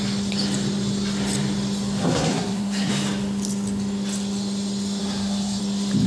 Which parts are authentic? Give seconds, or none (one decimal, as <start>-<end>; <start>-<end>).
0.0-2.0; 2.9-5.0; 5.6-6.1

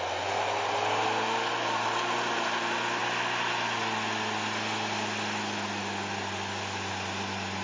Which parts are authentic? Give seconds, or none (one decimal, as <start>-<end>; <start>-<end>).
0.0-7.6

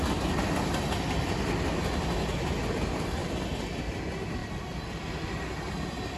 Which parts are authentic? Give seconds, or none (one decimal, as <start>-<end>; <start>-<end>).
0.0-3.2; 3.8-6.2

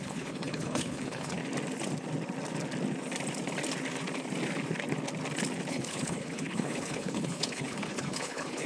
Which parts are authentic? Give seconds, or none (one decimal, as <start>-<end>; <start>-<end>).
1.4-5.7

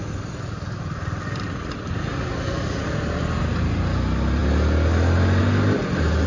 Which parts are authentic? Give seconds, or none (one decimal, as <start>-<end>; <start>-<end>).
0.0-6.3